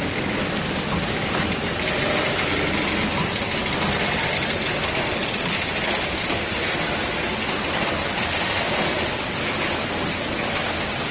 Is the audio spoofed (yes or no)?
no